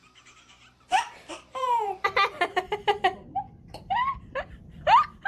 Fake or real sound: fake